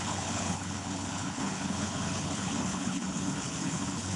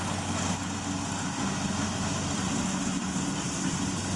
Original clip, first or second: second